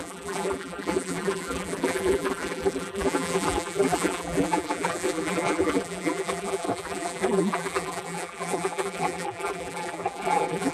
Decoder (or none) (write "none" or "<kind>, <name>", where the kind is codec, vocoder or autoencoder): vocoder, BigVGAN v2